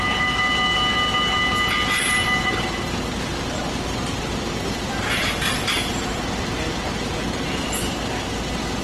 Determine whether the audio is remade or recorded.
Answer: recorded